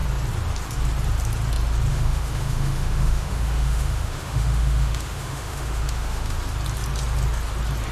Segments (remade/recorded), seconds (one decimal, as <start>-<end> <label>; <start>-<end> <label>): 0.0-1.9 recorded; 1.9-6.4 remade; 6.4-7.9 recorded